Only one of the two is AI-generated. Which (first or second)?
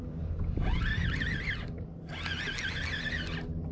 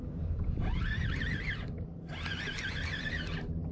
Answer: second